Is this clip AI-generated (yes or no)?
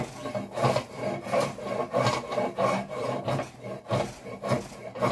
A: no